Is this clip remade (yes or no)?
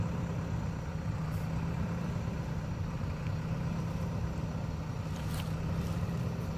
no